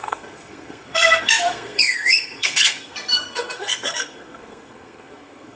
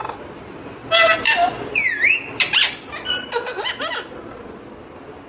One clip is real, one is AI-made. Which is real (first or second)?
second